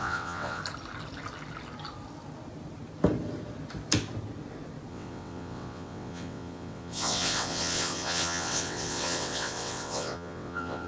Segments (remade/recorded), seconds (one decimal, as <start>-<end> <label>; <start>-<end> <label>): 0.0-0.6 remade; 0.6-4.9 recorded; 4.9-10.9 remade